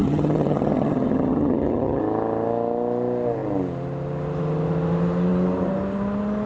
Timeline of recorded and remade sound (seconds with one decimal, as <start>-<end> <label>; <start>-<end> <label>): 0.0-2.0 remade; 2.0-6.5 recorded